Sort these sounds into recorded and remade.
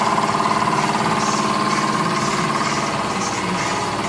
recorded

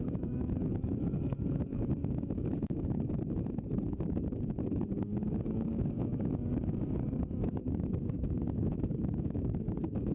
remade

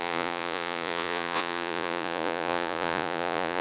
remade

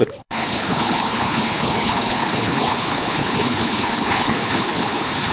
remade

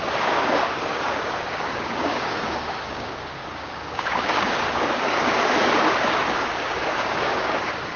remade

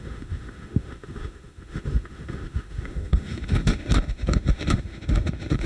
remade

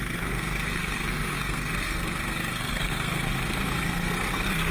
remade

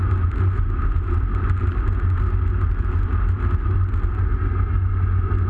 recorded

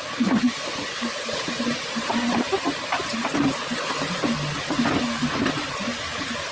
remade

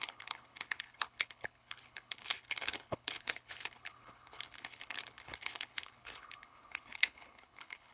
remade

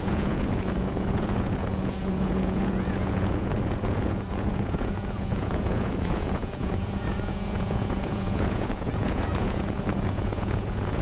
remade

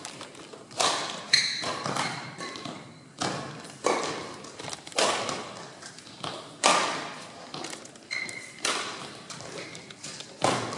remade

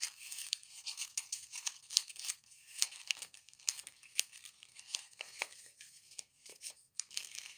remade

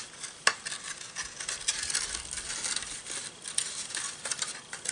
recorded